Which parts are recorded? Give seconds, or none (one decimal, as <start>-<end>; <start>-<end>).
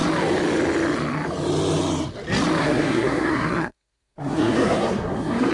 0.0-2.6